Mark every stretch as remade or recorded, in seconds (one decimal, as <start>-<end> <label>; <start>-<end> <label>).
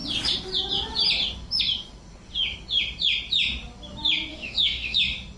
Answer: 0.0-4.3 recorded; 4.3-5.0 remade; 5.0-5.4 recorded